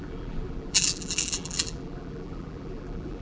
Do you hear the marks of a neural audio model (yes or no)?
yes